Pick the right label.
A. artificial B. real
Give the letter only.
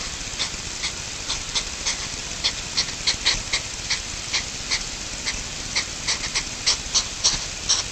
B